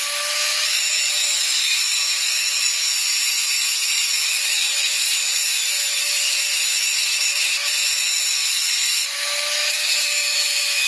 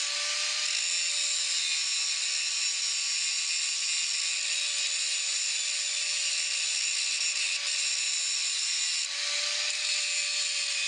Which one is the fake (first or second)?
first